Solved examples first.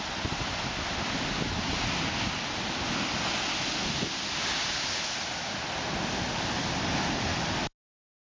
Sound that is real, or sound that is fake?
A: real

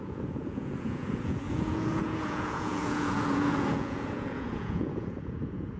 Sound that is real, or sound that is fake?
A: fake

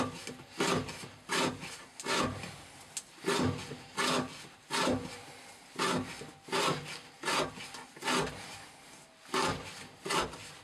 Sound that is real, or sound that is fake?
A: real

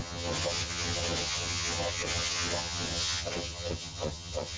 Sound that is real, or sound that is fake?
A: fake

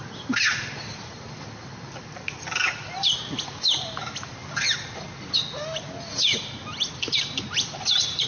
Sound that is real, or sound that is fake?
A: real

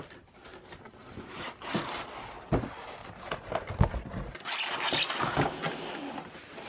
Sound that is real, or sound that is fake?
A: real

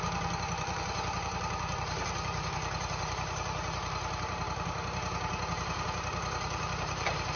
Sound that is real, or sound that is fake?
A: fake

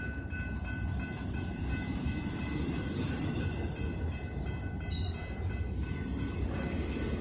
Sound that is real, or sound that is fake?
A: real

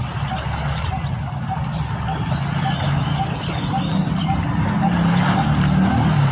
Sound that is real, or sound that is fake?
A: real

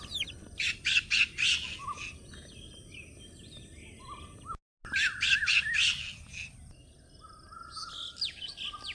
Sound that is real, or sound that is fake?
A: real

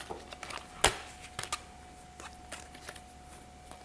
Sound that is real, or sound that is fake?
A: real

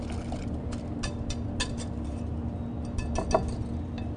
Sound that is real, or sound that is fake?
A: real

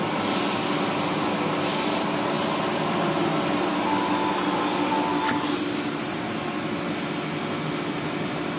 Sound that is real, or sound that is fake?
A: real